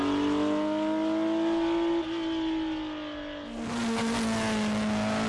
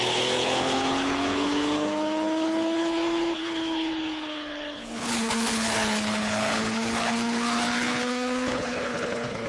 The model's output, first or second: second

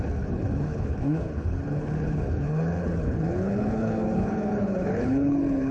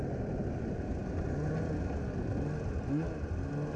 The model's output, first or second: first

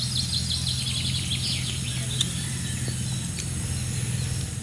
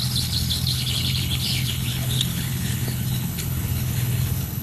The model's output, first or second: second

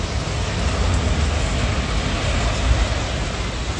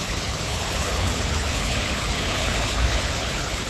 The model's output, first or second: second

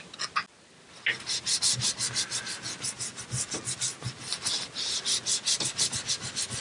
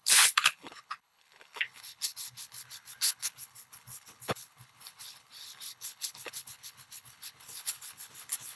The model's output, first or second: second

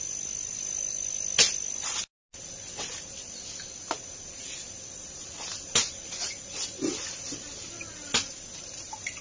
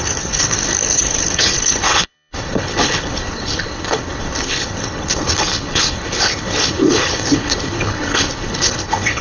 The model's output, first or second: second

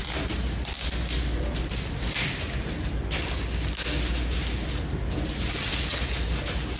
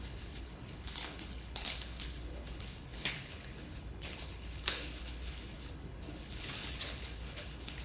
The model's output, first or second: second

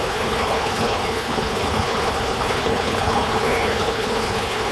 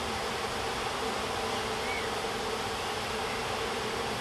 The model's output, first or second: first